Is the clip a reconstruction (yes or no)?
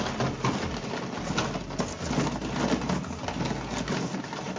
no